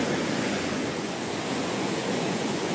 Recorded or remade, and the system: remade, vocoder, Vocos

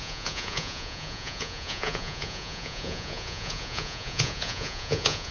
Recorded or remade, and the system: remade, vocoder, Vocos